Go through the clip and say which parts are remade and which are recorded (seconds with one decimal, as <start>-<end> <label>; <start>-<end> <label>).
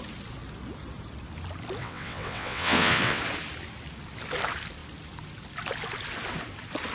0.0-1.8 recorded; 1.8-3.2 remade; 3.2-6.9 recorded